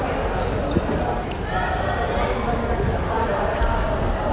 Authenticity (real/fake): real